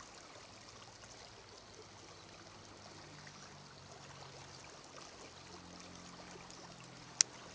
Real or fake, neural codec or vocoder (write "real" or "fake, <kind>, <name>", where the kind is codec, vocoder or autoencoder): real